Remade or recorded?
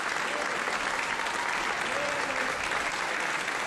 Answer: recorded